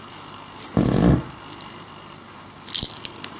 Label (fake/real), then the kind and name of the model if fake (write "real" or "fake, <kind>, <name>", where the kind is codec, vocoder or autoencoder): real